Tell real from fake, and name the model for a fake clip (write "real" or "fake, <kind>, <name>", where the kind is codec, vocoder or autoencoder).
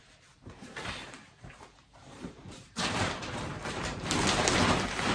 fake, vocoder, BigVGAN v2